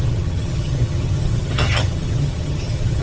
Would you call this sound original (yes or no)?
no